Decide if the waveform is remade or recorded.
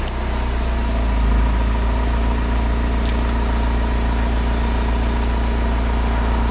recorded